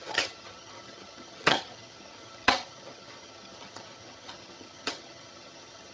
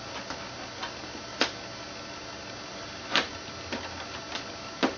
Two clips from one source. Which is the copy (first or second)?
first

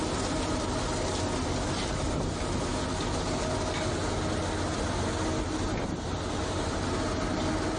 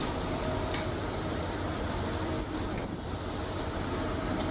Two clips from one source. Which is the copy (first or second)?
second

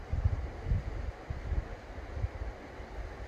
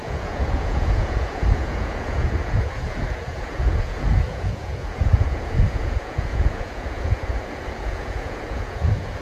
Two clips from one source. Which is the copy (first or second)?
second